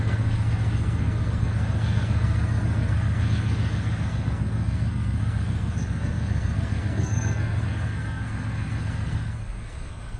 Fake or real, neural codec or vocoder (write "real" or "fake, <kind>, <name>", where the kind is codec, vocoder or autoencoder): fake, codec, SNAC